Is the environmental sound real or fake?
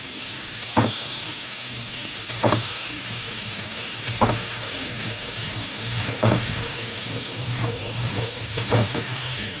fake